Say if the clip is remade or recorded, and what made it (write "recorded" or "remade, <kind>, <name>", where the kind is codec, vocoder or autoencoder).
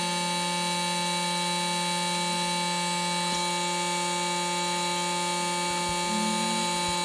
recorded